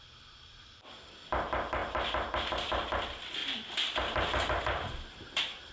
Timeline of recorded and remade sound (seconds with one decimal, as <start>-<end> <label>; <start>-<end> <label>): 0.0-5.7 recorded